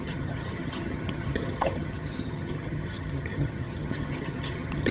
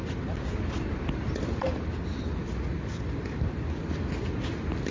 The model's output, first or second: first